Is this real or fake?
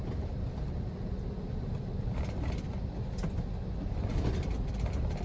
real